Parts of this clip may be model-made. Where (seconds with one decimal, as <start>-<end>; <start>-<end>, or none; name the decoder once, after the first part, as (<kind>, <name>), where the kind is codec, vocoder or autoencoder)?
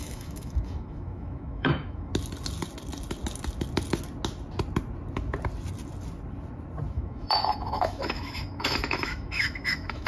0.0-2.1 (autoencoder, DAC-VAE); 6.9-10.1